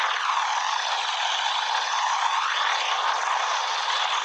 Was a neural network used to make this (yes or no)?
no